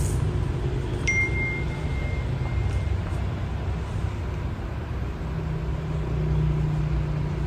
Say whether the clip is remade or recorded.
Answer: recorded